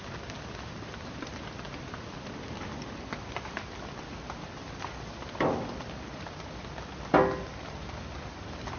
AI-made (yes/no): no